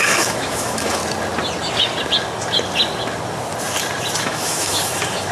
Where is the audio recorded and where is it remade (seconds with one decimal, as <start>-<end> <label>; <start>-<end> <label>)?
0.0-1.0 remade; 1.0-4.2 recorded; 4.2-5.3 remade